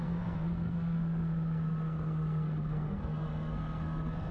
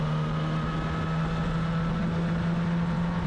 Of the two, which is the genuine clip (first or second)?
second